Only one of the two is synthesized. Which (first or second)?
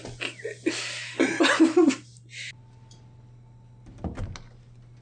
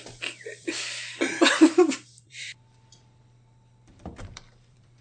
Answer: second